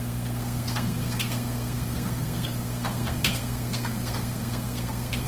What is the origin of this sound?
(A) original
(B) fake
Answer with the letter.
B